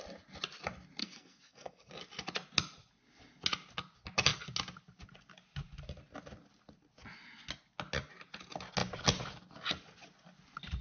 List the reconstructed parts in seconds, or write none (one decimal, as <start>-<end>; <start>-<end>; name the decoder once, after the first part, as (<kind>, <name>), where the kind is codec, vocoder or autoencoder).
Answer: 1.0-1.9 (codec, SNAC)